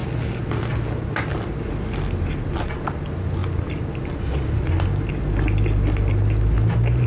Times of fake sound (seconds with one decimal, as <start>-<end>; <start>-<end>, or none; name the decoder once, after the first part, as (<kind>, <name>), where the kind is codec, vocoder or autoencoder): none